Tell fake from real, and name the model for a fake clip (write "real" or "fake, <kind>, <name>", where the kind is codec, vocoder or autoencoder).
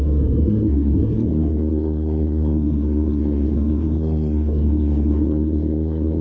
fake, codec, SNAC